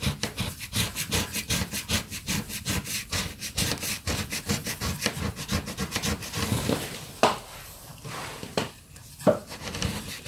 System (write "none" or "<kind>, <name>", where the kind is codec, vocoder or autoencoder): vocoder, BigVGAN v2